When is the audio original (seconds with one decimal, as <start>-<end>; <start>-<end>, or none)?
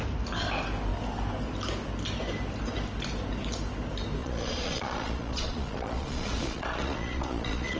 0.0-4.2